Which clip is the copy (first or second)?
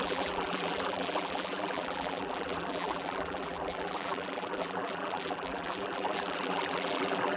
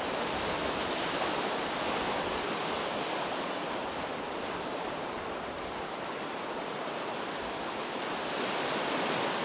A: first